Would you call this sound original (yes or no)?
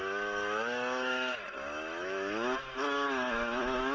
no